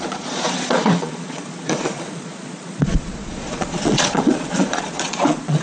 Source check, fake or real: fake